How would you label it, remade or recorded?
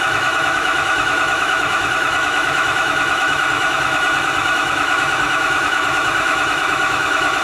remade